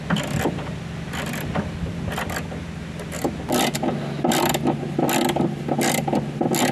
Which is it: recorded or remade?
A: recorded